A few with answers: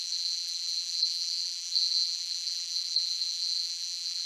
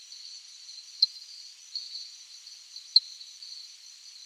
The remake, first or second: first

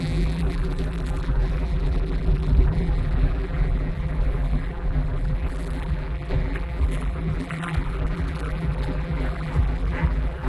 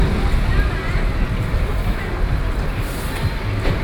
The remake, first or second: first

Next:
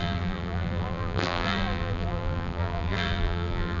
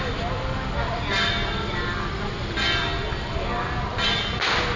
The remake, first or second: first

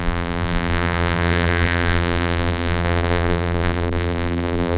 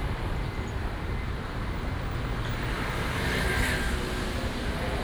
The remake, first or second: first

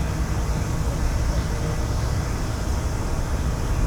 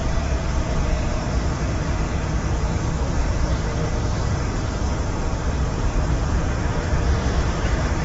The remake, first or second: second